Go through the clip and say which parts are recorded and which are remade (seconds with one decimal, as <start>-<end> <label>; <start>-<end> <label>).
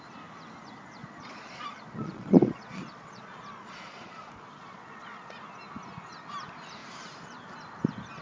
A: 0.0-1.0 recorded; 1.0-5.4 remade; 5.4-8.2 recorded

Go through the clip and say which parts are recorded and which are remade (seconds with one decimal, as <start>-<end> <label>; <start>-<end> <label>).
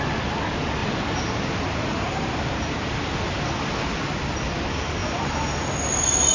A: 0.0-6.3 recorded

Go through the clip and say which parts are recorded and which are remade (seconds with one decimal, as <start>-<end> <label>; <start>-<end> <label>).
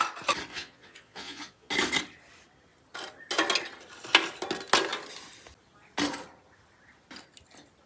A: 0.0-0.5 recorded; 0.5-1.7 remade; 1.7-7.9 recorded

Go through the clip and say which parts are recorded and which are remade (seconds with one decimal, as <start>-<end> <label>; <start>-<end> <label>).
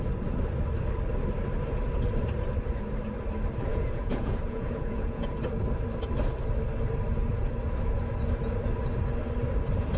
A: 0.0-3.7 recorded; 3.7-5.3 remade; 5.3-10.0 recorded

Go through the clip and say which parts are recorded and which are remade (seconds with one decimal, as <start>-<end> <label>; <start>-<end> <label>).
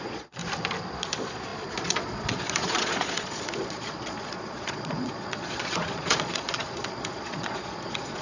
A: 0.0-0.4 remade; 0.4-0.9 recorded; 0.9-8.2 remade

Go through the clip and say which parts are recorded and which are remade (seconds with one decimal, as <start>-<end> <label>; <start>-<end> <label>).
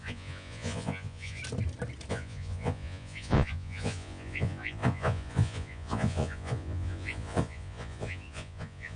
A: 0.0-1.4 remade; 1.4-2.1 recorded; 2.1-9.0 remade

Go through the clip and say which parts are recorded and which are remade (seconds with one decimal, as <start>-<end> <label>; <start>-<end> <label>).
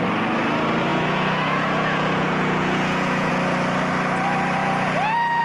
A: 0.0-0.9 recorded; 0.9-3.3 remade; 3.3-4.6 recorded; 4.6-5.4 remade